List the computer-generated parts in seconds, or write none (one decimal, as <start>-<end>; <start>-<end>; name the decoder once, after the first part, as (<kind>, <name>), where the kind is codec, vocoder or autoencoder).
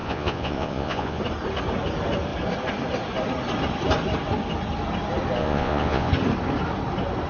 0.0-1.2 (vocoder, Vocos); 5.4-6.1